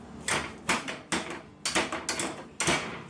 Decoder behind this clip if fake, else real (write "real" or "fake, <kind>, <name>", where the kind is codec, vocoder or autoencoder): real